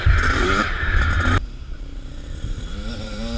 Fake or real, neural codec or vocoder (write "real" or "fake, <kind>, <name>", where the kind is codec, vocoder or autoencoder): fake, vocoder, BigVGAN v2